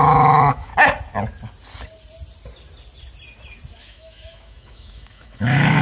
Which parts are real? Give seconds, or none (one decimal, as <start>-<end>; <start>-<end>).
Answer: 0.7-3.8